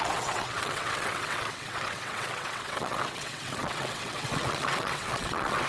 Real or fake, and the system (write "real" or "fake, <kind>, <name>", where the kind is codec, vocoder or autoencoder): fake, vocoder, WaveNeXt